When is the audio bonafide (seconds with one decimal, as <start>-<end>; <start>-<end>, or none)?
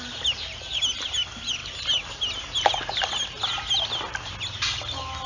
0.0-5.3